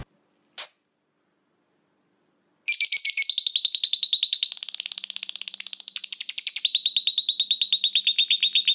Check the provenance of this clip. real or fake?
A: real